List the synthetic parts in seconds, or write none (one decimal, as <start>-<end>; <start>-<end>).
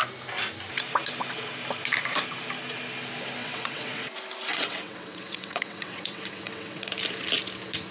3.4-4.1; 4.5-6.9